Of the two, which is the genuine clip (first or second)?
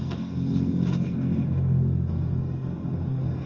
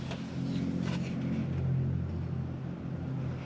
second